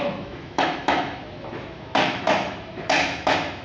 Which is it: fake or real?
fake